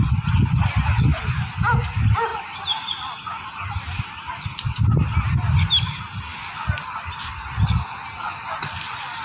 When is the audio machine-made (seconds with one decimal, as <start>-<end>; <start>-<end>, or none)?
none